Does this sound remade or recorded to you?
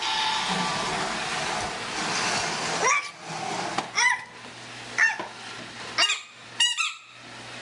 recorded